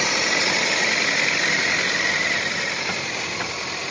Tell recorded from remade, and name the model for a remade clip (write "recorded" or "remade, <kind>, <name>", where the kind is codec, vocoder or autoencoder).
recorded